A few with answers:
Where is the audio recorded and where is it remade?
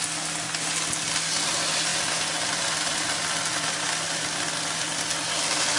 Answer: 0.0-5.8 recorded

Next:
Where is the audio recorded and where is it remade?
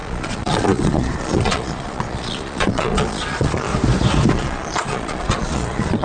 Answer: 0.0-3.7 remade; 3.7-4.3 recorded; 4.3-6.0 remade